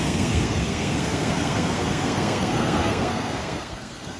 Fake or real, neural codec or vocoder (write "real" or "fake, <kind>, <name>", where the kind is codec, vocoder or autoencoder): fake, codec, SNAC